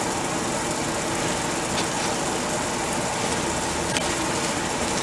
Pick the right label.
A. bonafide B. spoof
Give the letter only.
A